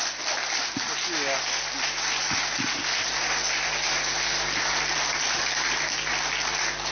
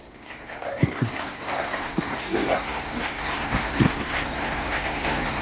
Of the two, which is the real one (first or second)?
first